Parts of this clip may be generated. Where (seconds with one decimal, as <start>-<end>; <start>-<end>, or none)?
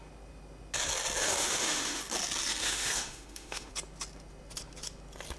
1.2-2.0; 2.6-3.7